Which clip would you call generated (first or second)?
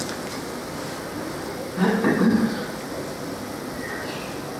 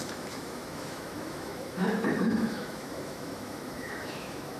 second